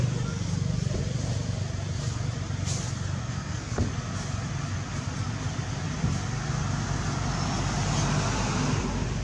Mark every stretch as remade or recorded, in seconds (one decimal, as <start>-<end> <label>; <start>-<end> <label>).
0.0-3.2 recorded; 3.2-3.9 remade; 3.9-9.2 recorded